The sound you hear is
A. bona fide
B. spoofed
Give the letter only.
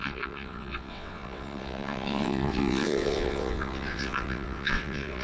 B